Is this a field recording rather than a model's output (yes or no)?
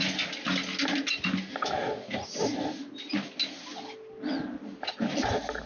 yes